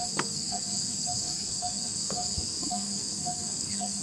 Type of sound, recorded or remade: remade